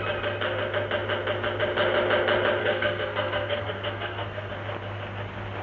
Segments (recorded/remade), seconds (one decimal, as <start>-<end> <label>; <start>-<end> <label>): 0.0-2.6 recorded; 2.6-4.5 remade; 4.5-5.6 recorded